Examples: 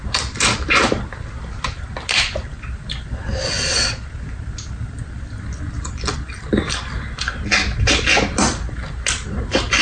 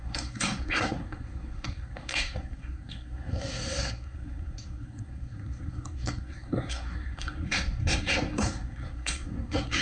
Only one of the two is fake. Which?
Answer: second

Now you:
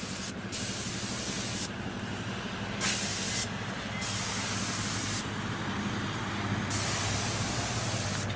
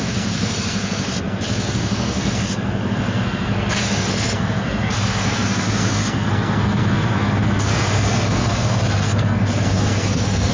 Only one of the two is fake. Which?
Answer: second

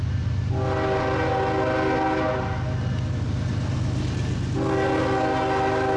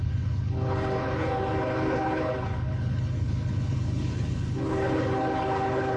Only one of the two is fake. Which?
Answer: second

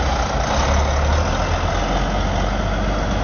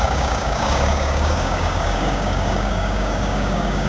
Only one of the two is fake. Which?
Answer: second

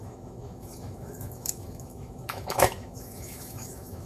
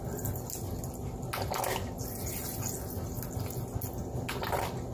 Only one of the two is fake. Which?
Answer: first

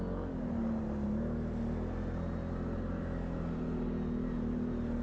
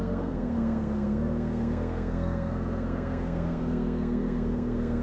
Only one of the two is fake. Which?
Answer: second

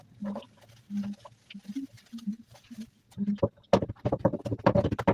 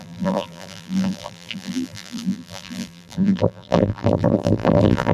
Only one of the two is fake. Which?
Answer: second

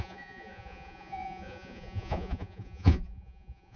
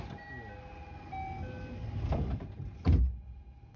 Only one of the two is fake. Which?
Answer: first